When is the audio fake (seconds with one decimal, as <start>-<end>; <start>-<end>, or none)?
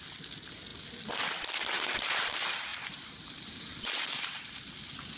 2.7-4.6